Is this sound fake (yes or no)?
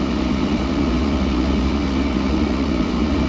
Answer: yes